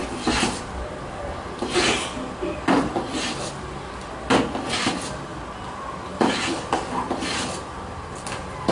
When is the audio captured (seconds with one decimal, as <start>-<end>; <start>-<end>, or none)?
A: 0.0-8.7